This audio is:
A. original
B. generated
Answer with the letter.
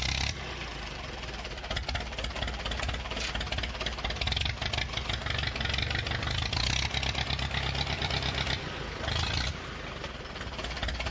A